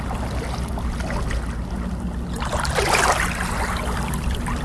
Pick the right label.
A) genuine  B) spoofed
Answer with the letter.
A